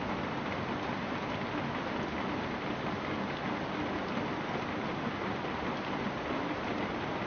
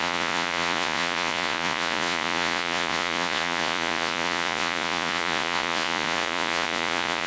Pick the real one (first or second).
first